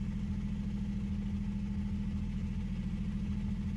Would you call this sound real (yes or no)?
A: yes